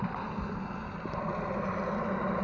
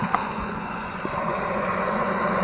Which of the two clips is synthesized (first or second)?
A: second